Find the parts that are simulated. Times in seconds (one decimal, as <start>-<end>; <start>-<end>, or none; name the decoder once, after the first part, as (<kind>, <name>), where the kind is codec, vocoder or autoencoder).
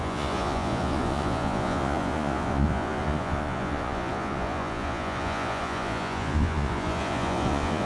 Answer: 0.0-7.9 (vocoder, Vocos)